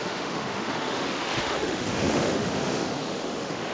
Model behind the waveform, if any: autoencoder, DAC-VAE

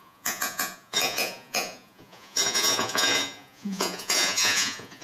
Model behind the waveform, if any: vocoder, Vocos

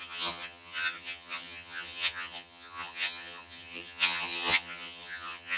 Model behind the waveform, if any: vocoder, HiFi-GAN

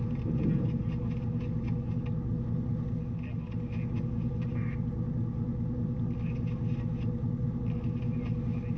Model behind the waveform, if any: none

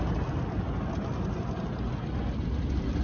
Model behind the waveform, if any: none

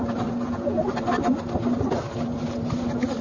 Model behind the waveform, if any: none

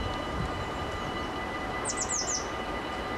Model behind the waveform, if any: none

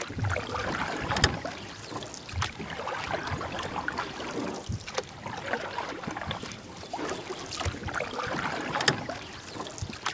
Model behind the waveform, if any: none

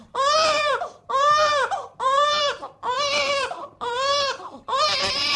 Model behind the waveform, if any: vocoder, BigVGAN v2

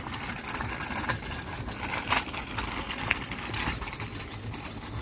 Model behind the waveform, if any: none